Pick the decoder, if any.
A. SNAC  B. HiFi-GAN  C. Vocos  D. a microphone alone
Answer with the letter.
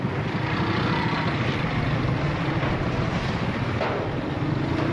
D